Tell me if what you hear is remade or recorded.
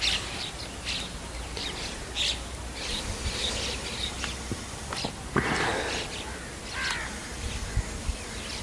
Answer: recorded